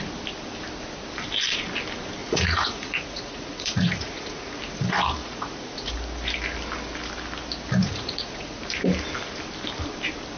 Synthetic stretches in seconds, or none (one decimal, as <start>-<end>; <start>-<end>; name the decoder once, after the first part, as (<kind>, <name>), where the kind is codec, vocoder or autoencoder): 2.2-4.6 (vocoder, Vocos); 5.2-5.9; 7.8-8.6